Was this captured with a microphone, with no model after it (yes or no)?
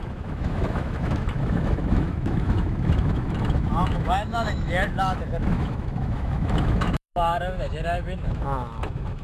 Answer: no